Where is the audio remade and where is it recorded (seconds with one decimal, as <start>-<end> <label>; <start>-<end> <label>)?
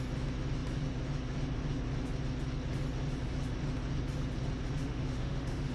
0.0-4.8 recorded; 4.8-5.7 remade